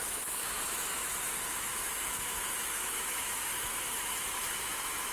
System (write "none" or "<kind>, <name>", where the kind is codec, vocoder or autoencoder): autoencoder, DAC-VAE